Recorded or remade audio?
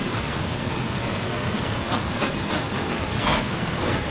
remade